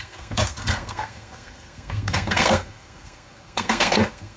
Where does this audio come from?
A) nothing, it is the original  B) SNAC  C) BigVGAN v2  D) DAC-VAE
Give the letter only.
B